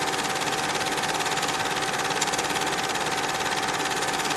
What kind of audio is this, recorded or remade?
recorded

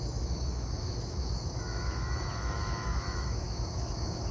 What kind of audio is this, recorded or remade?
remade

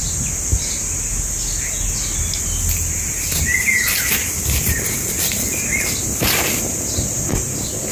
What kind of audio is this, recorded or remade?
recorded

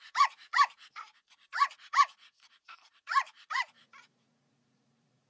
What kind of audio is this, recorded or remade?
remade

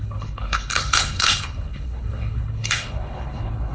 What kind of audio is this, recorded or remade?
remade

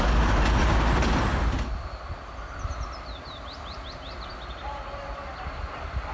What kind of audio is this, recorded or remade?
recorded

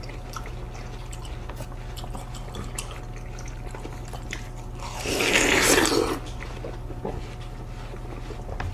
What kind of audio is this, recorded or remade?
recorded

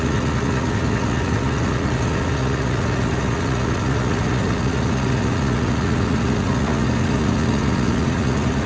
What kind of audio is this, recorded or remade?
remade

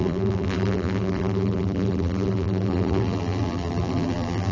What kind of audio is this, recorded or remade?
remade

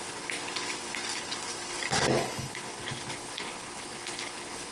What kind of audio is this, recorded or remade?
remade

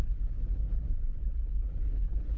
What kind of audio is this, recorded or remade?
remade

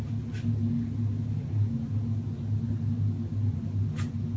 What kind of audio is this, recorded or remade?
recorded